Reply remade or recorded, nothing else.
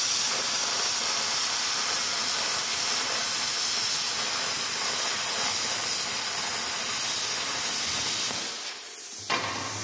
recorded